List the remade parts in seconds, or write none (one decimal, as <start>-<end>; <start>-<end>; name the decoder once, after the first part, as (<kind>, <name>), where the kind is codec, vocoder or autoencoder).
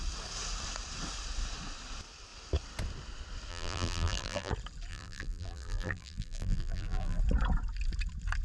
3.5-4.5 (vocoder, BigVGAN v2); 4.9-7.2